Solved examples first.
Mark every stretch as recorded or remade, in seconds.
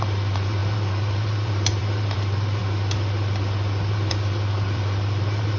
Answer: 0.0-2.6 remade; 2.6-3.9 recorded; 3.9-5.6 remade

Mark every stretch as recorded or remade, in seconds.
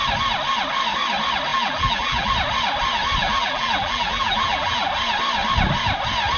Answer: 0.0-1.5 recorded; 1.5-2.3 remade; 2.3-3.2 recorded; 3.2-4.9 remade; 4.9-6.4 recorded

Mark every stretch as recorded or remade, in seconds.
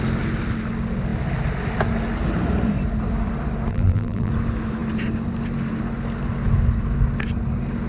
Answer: 0.0-3.7 recorded; 3.7-4.3 remade; 4.3-7.9 recorded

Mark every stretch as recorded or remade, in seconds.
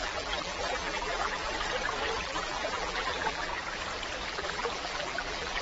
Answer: 0.0-1.4 remade; 1.4-2.1 recorded; 2.1-3.5 remade; 3.5-4.3 recorded; 4.3-5.6 remade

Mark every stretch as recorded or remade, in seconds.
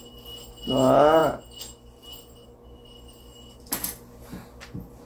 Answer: 0.0-5.1 recorded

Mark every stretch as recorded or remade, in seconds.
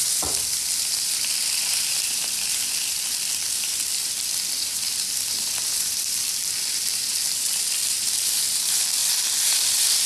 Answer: 0.0-9.0 remade; 9.0-9.6 recorded; 9.6-10.1 remade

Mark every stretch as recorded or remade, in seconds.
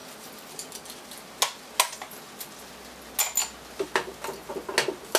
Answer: 0.0-5.2 recorded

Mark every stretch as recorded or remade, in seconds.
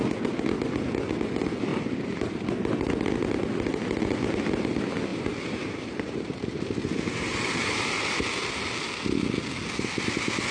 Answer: 0.0-1.7 recorded; 1.7-2.5 remade; 2.5-5.1 recorded; 5.1-8.2 remade; 8.2-10.5 recorded